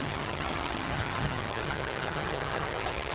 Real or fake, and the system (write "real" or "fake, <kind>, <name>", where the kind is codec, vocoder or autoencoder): fake, vocoder, HiFi-GAN